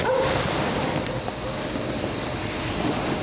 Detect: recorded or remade recorded